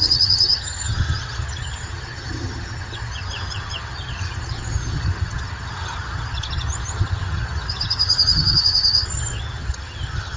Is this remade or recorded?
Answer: remade